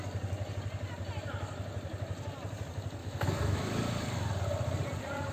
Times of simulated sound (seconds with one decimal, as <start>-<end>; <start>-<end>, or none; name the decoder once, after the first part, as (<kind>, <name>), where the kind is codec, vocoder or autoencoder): 3.0-3.8 (autoencoder, DAC-VAE)